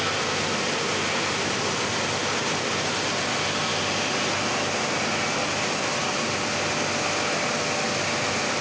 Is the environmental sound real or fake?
real